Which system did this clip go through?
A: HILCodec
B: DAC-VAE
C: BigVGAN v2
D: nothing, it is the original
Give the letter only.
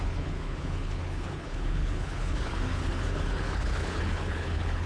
A